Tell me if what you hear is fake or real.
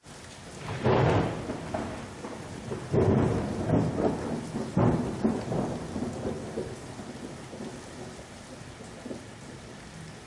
real